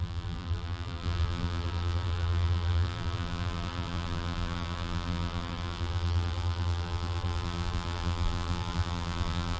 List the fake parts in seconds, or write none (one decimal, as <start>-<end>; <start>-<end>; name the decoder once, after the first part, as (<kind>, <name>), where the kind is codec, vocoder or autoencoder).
0.0-9.6 (vocoder, BigVGAN v2)